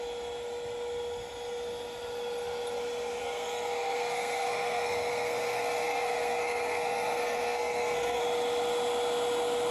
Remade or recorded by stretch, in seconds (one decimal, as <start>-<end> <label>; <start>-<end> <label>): 0.0-3.2 recorded; 3.2-8.2 remade; 8.2-9.7 recorded